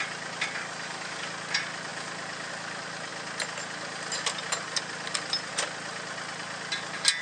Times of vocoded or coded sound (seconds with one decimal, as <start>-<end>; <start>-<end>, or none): 0.6-1.2